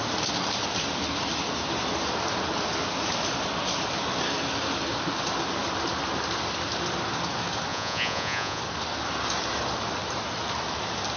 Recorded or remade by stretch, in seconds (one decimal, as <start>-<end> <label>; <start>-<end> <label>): 0.0-7.7 recorded; 7.7-8.6 remade; 8.6-11.2 recorded